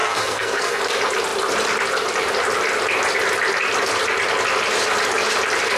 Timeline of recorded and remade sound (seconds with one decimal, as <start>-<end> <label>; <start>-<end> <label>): 0.0-0.8 remade; 0.8-5.8 recorded